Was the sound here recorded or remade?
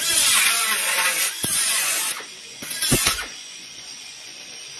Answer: remade